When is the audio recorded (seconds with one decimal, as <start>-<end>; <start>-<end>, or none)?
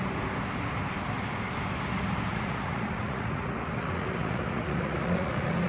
0.0-2.3